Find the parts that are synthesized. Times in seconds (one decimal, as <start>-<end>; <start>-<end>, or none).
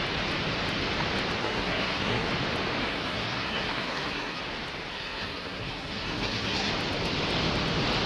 1.4-2.3; 2.8-4.4; 4.9-6.7